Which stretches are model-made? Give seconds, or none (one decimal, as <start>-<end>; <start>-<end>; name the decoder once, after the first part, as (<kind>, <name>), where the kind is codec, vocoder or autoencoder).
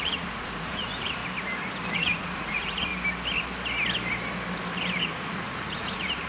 0.0-1.2 (vocoder, Vocos); 1.9-2.9; 5.0-6.3